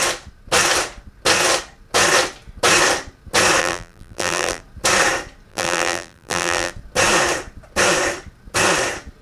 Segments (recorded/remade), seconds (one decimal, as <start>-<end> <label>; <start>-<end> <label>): 0.0-3.6 recorded; 3.6-4.6 remade; 4.6-5.5 recorded; 5.5-6.7 remade; 6.7-9.2 recorded